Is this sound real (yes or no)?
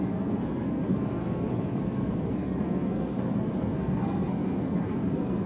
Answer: no